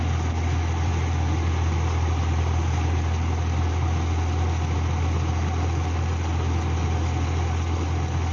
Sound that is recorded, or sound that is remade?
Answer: recorded